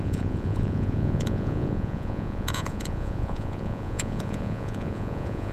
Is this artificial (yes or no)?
yes